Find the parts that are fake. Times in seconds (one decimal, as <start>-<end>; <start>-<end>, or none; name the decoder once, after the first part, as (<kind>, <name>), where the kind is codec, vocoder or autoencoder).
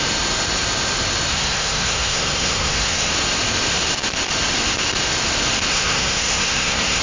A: 1.3-3.1 (codec, SNAC); 5.7-7.0